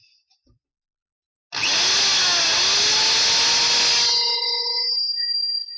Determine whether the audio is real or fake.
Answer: real